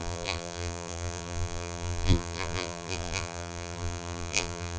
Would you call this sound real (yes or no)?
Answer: no